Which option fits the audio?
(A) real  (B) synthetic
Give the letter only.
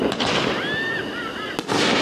A